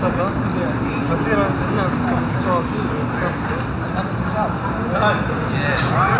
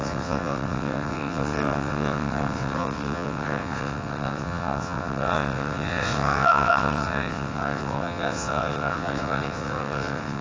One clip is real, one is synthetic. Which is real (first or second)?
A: first